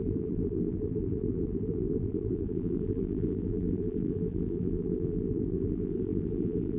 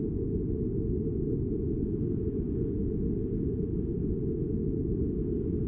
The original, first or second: second